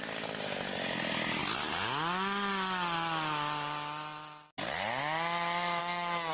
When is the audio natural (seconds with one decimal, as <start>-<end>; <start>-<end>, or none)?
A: 0.0-5.8